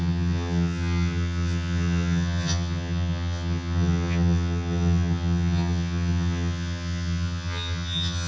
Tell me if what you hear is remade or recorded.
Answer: remade